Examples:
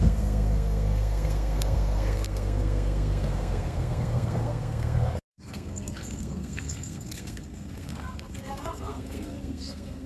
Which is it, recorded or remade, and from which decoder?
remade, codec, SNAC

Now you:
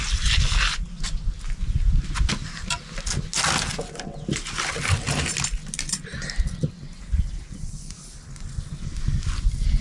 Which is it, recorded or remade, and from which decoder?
recorded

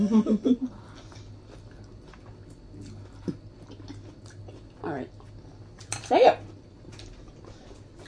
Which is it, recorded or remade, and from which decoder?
recorded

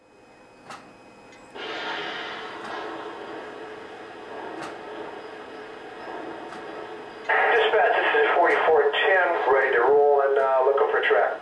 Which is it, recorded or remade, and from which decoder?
recorded